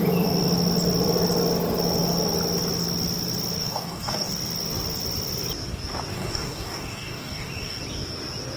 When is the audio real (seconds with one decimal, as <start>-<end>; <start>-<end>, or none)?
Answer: 0.0-3.6; 4.3-6.1; 7.8-8.6